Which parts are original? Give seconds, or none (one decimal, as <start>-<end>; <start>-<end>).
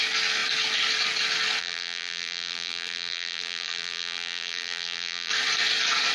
0.0-1.6; 5.3-6.1